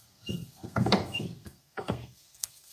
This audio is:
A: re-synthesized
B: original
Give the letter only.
A